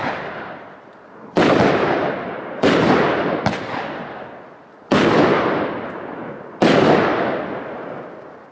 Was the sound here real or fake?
real